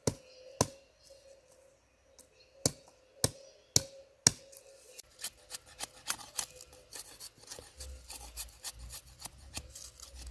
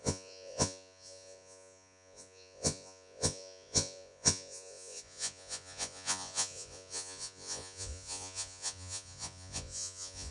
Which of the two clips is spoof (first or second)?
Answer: second